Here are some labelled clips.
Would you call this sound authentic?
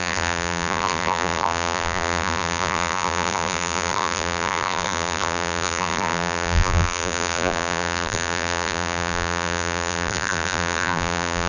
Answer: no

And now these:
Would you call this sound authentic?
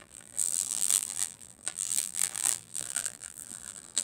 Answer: no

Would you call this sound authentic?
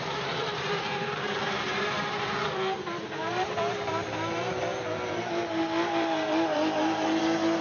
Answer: no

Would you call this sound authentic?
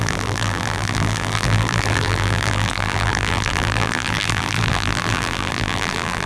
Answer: no